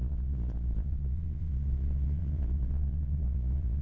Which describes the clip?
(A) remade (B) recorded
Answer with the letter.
A